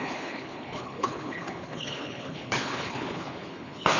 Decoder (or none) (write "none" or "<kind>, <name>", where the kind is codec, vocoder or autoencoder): codec, HILCodec